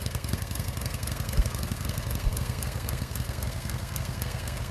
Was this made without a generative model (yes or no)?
no